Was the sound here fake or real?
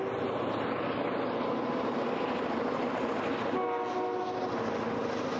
real